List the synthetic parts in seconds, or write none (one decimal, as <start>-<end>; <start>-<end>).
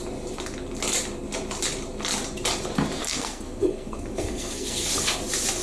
3.0-4.9